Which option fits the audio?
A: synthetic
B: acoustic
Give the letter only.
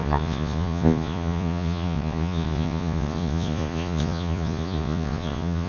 A